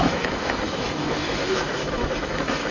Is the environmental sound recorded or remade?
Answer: remade